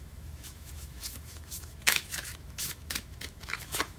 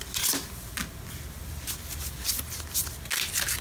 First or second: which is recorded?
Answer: second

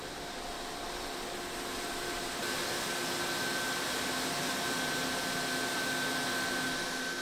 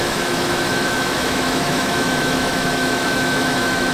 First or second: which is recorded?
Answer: first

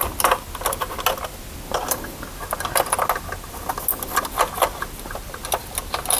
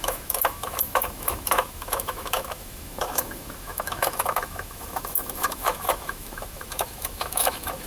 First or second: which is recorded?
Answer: first